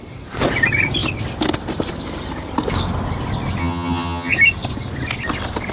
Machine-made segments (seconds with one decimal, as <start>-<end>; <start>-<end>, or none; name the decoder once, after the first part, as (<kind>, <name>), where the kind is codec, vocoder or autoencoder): 3.6-4.3 (vocoder, HiFi-GAN)